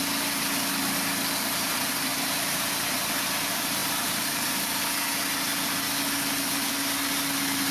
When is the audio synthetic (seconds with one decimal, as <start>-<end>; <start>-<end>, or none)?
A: 2.1-2.7; 3.8-4.8